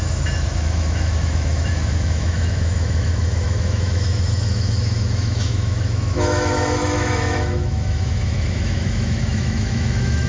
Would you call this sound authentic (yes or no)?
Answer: no